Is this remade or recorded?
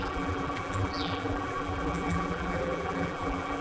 remade